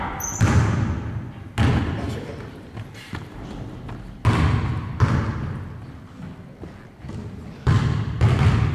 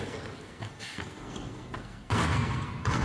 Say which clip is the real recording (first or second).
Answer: first